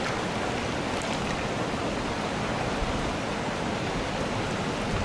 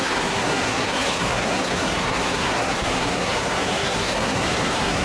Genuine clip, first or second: first